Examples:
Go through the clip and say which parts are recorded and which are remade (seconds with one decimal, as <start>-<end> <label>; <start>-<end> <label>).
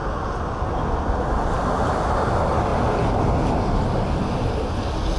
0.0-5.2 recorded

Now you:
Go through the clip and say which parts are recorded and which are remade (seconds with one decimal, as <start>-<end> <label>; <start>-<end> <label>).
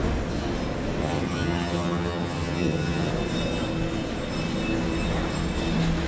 0.0-1.0 recorded; 1.0-3.1 remade; 3.1-6.1 recorded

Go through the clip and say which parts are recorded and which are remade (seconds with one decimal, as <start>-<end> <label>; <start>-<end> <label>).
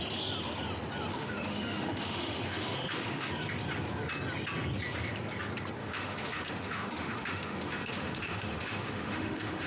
0.0-1.1 recorded; 1.1-3.3 remade; 3.3-5.8 recorded; 5.8-9.7 remade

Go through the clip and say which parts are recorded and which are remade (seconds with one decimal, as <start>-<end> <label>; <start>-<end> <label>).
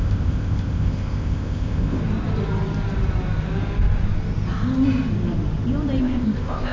0.0-2.0 remade; 2.0-6.0 recorded; 6.0-6.7 remade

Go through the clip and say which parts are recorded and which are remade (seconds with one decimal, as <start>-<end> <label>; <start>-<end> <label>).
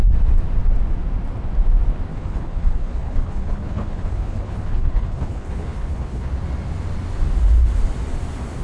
0.0-2.1 recorded; 2.1-6.3 remade; 6.3-8.6 recorded